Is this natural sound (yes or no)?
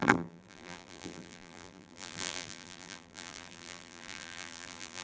no